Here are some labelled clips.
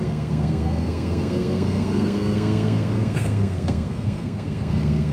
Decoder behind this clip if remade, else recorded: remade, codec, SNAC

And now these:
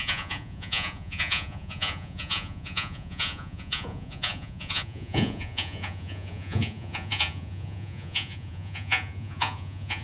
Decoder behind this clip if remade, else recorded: remade, vocoder, Vocos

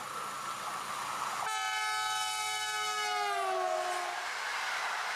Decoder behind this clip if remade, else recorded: recorded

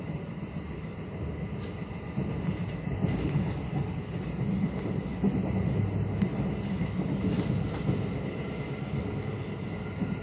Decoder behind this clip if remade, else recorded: recorded